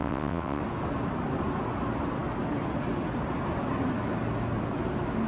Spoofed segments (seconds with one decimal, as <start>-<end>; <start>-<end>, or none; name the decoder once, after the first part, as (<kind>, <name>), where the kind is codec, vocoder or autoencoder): 0.0-0.6 (vocoder, WaveNeXt)